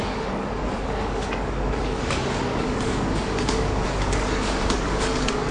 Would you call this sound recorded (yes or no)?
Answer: no